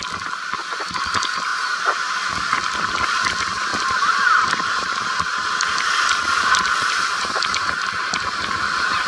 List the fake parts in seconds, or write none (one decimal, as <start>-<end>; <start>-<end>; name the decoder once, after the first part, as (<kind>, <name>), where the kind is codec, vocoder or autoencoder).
none